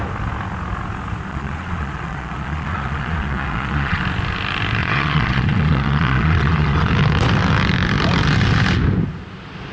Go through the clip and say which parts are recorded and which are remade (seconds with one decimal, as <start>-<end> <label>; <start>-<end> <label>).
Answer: 0.0-1.3 recorded; 1.3-4.0 remade; 4.0-4.8 recorded; 4.8-6.9 remade; 6.9-9.7 recorded

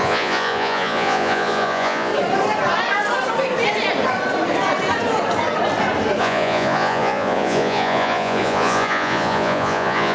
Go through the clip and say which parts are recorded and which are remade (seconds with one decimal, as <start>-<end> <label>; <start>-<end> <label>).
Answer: 0.0-2.1 remade; 2.1-6.2 recorded; 6.2-10.1 remade

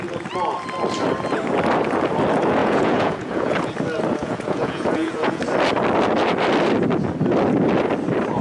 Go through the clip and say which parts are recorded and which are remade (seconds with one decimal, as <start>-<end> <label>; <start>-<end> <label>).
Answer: 0.0-2.6 recorded; 2.6-3.7 remade; 3.7-4.2 recorded; 4.2-5.4 remade; 5.4-8.4 recorded

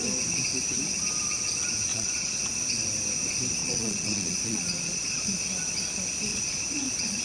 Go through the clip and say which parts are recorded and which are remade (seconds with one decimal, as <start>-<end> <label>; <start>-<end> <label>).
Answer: 0.0-1.9 recorded; 1.9-2.4 remade; 2.4-3.6 recorded; 3.6-5.3 remade; 5.3-6.3 recorded; 6.3-7.2 remade

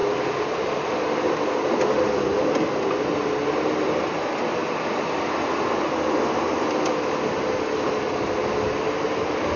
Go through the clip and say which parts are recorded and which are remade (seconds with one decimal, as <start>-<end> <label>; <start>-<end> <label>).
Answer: 0.0-9.6 recorded